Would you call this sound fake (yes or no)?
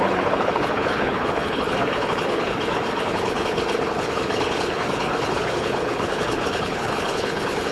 yes